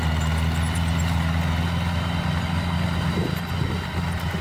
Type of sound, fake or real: real